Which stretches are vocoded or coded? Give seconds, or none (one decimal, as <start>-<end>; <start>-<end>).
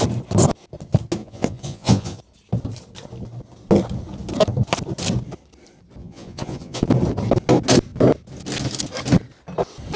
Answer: 1.2-2.2; 6.0-6.8